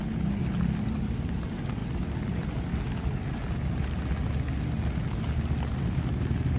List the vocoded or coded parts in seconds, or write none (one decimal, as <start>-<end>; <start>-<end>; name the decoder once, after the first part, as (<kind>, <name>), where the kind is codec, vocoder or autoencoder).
none